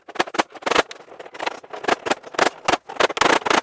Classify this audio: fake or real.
real